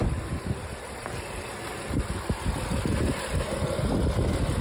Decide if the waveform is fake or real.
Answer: real